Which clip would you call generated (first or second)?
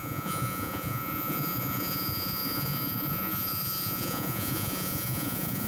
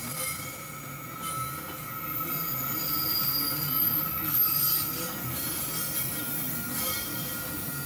first